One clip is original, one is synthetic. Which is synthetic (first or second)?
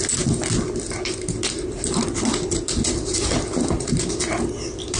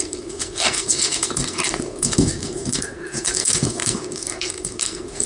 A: second